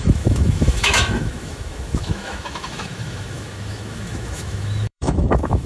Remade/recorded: remade